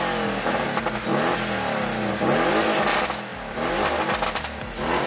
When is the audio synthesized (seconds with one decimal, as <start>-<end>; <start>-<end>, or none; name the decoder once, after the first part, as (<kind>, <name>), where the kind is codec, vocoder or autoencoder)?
none